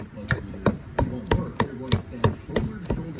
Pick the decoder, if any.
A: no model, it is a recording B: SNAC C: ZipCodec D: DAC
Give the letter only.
A